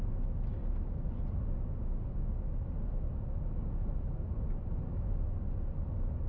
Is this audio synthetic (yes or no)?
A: no